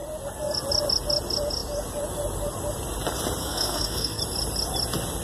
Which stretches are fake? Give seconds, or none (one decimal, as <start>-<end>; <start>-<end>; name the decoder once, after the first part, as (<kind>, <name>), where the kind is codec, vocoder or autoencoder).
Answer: 3.4-4.2 (codec, SNAC)